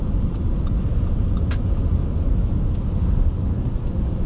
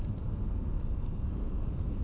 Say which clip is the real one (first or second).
first